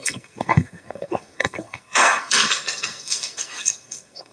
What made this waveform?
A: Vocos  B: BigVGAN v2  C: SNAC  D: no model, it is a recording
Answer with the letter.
C